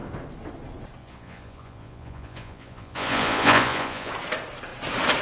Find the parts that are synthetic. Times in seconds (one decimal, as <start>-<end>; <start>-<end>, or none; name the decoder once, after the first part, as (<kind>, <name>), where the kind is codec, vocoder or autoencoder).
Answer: 1.0-4.1 (vocoder, Vocos)